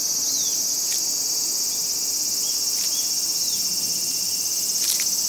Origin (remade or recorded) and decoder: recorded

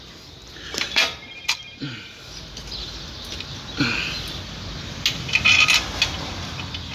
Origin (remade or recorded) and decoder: recorded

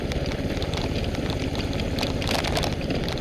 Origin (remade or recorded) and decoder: recorded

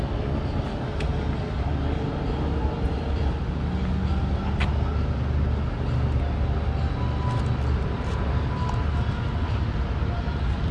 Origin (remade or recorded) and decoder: recorded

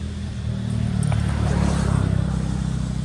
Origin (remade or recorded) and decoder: recorded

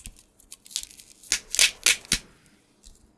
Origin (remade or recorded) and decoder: recorded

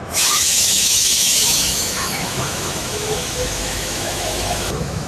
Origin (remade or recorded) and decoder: remade, autoencoder, DAC-VAE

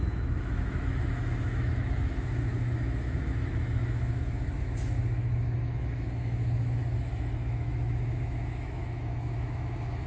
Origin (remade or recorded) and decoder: remade, autoencoder, DAC-VAE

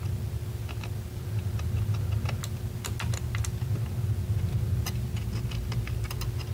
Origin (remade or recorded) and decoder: recorded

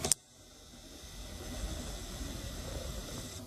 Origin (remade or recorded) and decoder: recorded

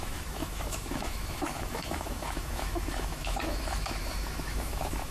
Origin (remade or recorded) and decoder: remade, autoencoder, DAC-VAE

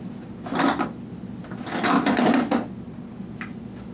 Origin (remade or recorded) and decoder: recorded